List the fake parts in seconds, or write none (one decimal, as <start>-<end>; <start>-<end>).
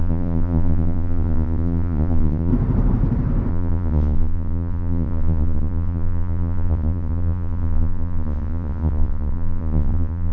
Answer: 0.0-2.5; 3.5-10.3